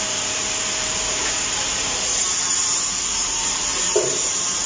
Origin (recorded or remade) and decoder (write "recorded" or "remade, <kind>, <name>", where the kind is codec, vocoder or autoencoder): remade, vocoder, BigVGAN v2